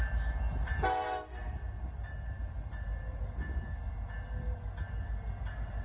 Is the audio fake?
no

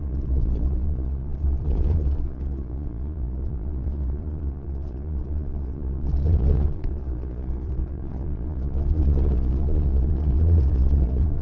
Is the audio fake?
yes